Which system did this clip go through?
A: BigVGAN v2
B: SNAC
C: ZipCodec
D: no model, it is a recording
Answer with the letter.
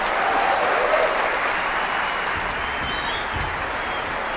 D